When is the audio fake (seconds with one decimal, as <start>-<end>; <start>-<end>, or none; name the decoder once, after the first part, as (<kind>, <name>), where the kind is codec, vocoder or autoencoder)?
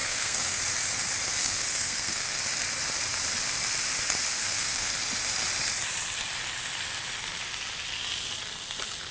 0.0-0.6 (codec, SNAC); 1.4-2.4; 4.4-4.9